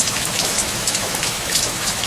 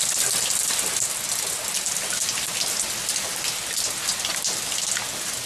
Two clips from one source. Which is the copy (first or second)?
first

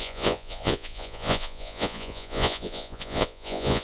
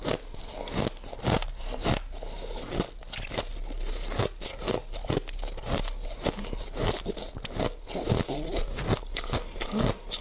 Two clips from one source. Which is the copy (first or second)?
first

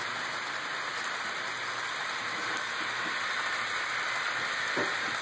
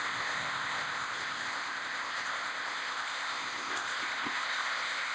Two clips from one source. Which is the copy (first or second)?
second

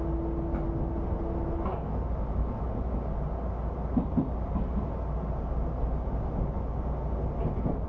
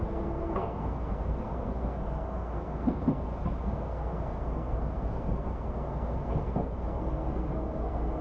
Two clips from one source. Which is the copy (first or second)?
second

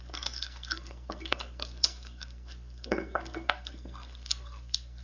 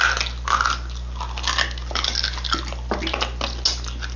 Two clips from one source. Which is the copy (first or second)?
first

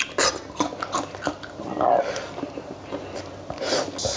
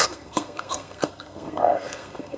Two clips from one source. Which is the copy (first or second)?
second